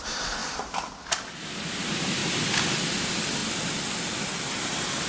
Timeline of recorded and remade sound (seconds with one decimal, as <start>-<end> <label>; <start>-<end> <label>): 0.0-0.4 remade; 0.4-1.3 recorded; 1.3-2.2 remade; 2.2-2.9 recorded; 2.9-3.4 remade; 3.4-4.4 recorded; 4.4-5.1 remade